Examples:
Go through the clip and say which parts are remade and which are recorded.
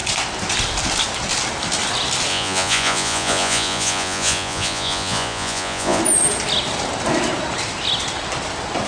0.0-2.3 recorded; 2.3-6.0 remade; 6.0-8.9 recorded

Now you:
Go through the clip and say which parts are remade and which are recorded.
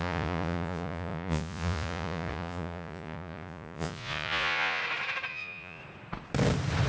0.0-4.8 remade; 4.8-5.3 recorded; 5.3-5.8 remade; 5.8-6.9 recorded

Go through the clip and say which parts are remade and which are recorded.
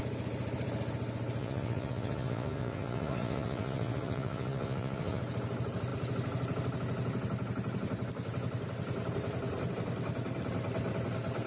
0.0-1.4 recorded; 1.4-5.2 remade; 5.2-11.5 recorded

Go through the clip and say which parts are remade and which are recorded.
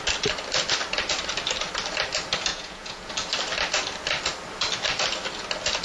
0.0-2.5 recorded; 2.5-3.1 remade; 3.1-5.8 recorded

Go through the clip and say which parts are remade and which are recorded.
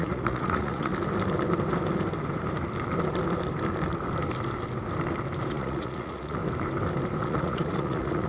0.0-0.9 remade; 0.9-5.5 recorded; 5.5-6.4 remade; 6.4-7.2 recorded; 7.2-8.3 remade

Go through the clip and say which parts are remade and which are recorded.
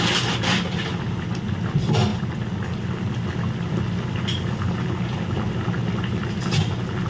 0.0-7.1 recorded